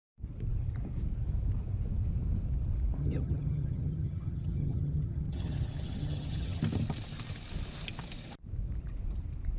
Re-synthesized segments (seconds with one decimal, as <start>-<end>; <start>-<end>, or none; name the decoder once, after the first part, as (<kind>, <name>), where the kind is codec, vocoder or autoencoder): 3.0-6.6 (vocoder, HiFi-GAN)